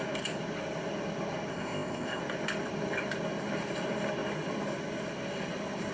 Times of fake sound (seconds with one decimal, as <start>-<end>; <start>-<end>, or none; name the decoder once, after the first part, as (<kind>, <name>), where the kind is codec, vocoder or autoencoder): 1.5-2.2 (codec, ZipCodec)